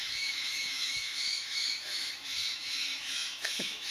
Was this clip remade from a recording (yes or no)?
yes